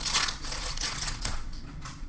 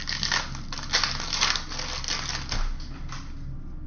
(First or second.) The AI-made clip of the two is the first